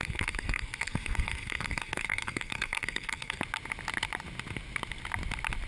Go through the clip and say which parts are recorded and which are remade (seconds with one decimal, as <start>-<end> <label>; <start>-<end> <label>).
0.0-3.4 remade; 3.4-5.7 recorded